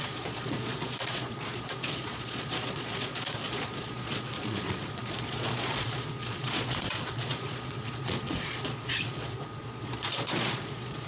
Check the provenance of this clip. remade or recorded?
remade